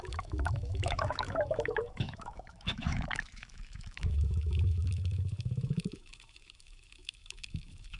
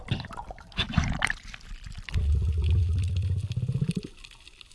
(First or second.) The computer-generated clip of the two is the first